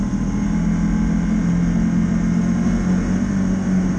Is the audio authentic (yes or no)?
yes